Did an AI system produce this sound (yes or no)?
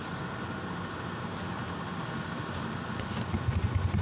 no